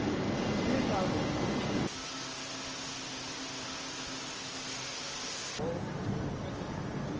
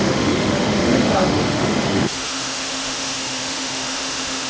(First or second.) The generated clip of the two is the second